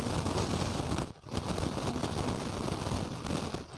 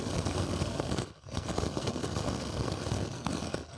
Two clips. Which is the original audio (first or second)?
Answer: first